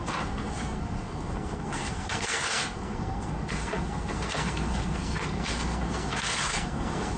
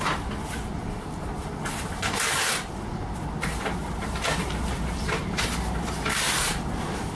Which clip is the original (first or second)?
second